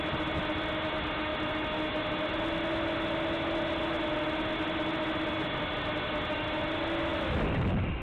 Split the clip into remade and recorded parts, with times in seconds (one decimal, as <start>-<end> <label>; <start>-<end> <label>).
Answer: 0.0-7.1 recorded; 7.1-8.0 remade